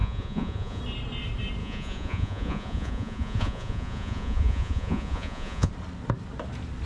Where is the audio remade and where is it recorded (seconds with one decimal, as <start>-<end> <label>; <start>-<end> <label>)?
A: 0.0-0.8 remade; 0.8-1.6 recorded; 1.6-5.7 remade; 5.7-6.9 recorded